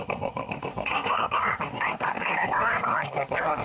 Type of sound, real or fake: fake